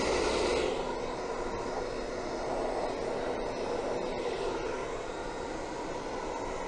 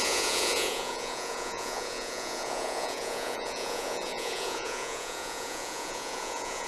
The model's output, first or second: second